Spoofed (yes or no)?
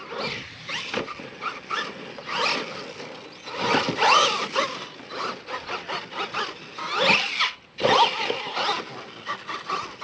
no